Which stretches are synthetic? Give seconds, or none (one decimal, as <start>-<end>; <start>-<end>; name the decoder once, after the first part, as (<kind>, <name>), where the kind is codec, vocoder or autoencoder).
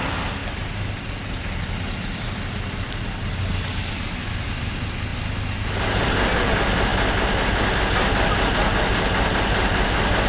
none